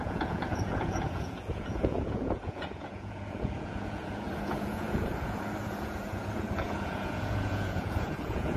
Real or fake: fake